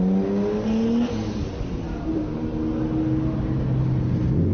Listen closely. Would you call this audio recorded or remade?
recorded